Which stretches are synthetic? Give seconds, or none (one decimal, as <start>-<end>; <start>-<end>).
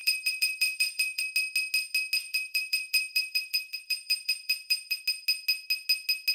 0.0-1.2; 2.2-5.0